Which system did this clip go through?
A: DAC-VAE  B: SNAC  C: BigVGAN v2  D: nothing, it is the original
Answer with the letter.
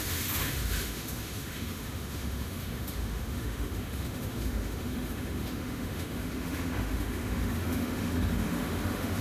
A